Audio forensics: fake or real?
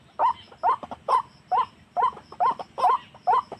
real